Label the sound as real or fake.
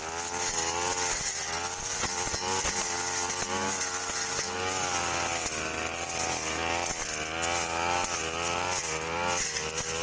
real